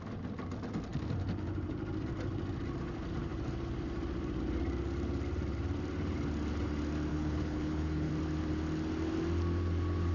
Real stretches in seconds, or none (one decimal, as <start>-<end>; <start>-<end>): 0.0-7.1; 8.1-10.1